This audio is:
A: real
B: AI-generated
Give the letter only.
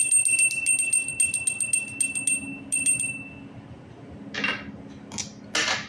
A